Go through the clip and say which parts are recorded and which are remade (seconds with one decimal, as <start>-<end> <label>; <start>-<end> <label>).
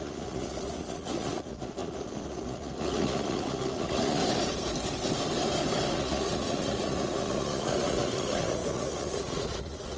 0.0-4.2 remade; 4.2-5.9 recorded; 5.9-10.0 remade